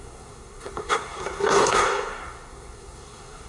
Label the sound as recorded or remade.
remade